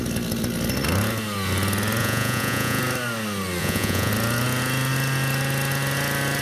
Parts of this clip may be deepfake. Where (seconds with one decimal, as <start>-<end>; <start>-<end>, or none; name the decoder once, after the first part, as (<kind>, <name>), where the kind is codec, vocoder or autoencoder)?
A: 2.0-2.8 (vocoder, Vocos); 3.6-4.1